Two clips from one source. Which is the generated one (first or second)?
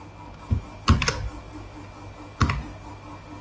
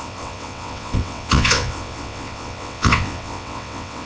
second